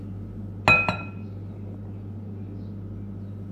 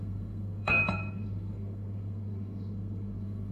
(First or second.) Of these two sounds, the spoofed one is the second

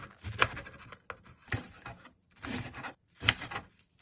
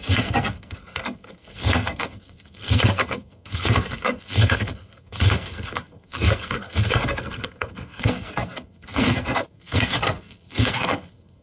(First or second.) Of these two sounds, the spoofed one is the second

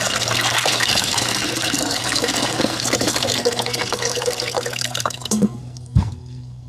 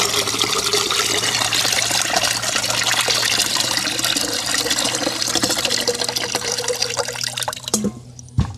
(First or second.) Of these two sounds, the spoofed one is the first